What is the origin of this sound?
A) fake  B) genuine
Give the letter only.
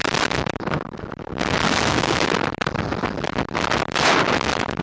B